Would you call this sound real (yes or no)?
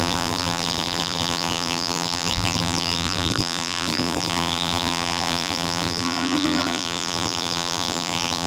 no